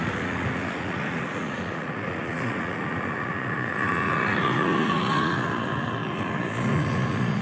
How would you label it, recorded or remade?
remade